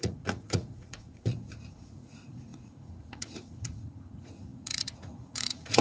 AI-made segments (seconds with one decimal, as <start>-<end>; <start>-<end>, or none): 0.0-5.8